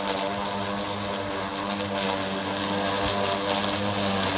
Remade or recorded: recorded